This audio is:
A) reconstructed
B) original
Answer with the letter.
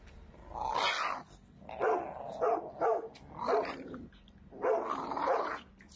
B